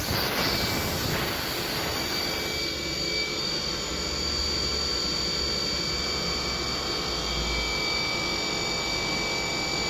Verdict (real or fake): real